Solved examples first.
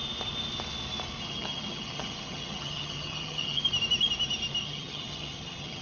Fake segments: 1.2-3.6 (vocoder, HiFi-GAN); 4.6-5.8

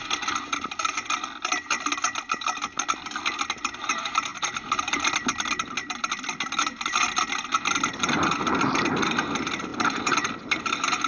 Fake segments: none